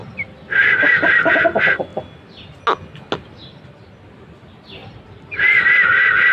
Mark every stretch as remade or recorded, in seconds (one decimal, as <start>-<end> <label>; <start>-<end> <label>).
0.0-6.3 recorded